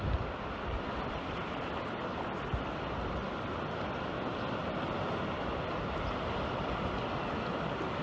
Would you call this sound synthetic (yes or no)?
no